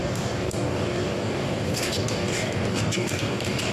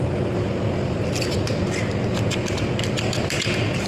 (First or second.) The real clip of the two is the second